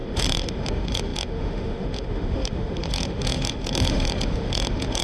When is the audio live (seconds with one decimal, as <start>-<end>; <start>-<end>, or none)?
none